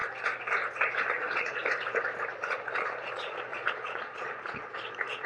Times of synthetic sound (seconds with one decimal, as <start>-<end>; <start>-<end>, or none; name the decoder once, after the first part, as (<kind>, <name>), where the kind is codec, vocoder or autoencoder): 1.1-1.6 (vocoder, Vocos); 2.3-5.3